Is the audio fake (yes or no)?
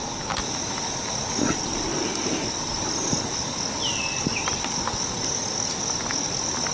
no